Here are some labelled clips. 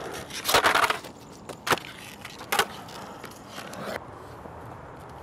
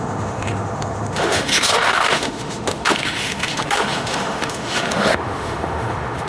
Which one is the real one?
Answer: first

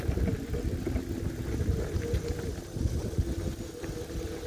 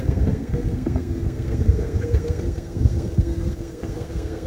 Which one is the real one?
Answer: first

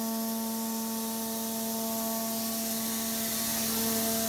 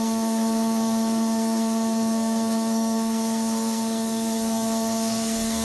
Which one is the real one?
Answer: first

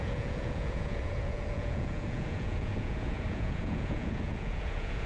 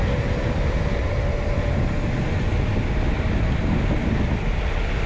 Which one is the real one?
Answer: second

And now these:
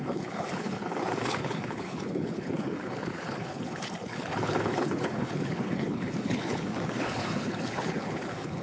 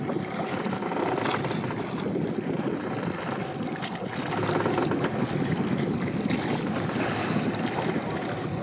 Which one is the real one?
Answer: second